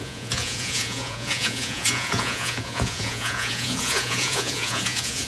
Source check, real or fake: fake